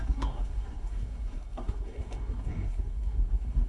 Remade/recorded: remade